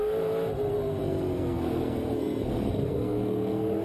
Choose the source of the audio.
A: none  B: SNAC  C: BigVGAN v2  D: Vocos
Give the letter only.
B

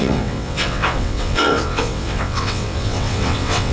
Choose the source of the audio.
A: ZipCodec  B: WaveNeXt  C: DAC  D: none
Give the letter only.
B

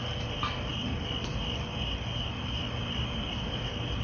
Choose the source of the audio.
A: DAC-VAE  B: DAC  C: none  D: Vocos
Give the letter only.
C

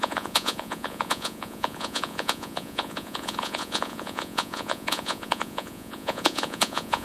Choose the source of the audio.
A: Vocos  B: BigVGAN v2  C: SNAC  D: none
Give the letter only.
A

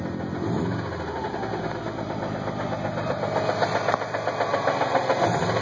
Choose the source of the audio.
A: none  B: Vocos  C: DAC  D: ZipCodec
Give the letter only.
A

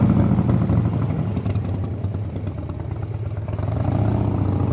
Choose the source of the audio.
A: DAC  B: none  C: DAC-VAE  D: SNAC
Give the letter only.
B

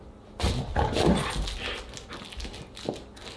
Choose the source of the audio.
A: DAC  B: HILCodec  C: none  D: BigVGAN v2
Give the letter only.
C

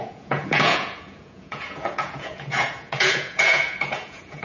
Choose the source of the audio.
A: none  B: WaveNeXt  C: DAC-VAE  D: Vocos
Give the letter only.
D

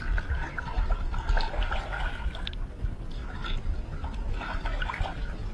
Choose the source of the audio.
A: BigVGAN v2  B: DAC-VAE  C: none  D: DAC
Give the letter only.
C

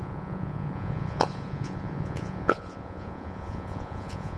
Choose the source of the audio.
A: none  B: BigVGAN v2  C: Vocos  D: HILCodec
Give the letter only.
C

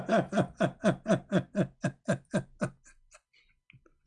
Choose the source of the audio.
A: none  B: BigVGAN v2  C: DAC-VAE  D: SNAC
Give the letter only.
A